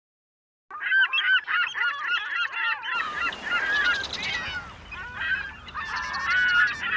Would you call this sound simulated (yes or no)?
no